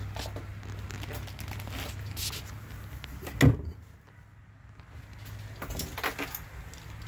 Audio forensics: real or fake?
real